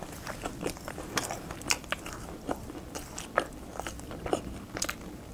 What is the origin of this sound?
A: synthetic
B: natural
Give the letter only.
A